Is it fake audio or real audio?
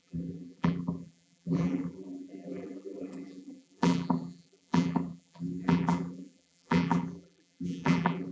fake